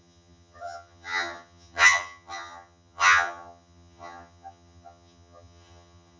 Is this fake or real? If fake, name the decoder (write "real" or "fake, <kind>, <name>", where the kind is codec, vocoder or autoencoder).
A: fake, vocoder, HiFi-GAN